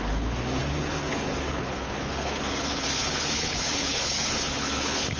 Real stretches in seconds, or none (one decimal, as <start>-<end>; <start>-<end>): none